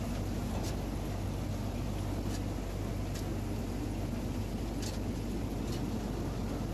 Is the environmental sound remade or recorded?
recorded